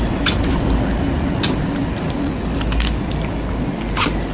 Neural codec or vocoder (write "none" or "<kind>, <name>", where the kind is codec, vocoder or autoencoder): none